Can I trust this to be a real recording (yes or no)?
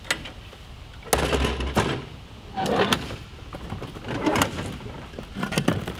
yes